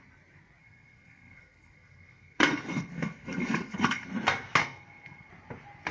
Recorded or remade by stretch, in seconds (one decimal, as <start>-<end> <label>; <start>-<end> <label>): 0.0-0.6 recorded; 0.6-4.1 remade; 4.1-4.6 recorded; 4.6-5.3 remade; 5.3-5.9 recorded